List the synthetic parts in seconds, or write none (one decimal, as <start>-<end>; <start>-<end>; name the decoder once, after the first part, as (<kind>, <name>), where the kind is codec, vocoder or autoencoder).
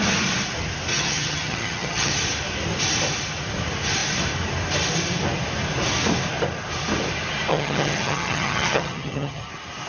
0.9-2.1 (vocoder, HiFi-GAN); 7.5-9.5